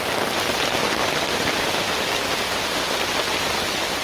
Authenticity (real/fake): real